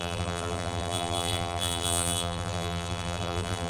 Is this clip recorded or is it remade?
remade